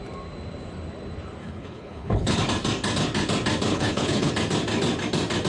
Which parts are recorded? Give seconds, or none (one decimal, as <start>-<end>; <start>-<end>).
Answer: 0.0-1.4; 2.4-3.7; 4.3-5.5